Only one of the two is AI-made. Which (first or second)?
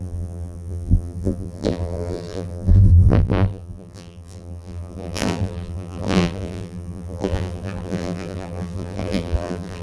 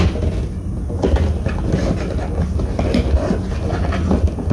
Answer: first